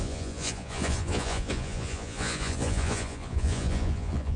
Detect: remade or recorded remade